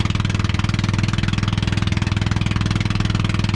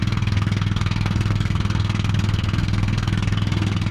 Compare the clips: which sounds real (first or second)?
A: first